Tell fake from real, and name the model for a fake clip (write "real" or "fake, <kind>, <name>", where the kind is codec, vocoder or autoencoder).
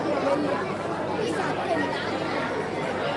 real